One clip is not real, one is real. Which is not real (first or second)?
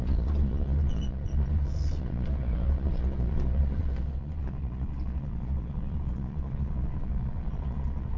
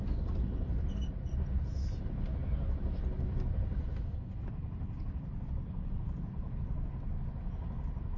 first